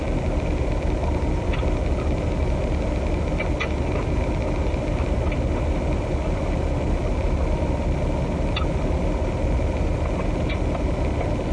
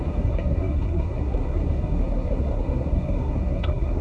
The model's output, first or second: second